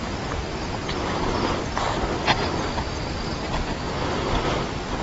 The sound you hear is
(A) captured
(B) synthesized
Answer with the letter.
A